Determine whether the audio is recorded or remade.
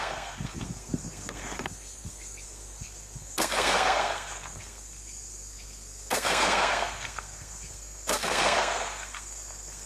remade